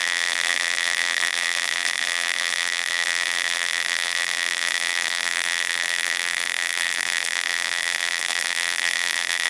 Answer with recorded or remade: remade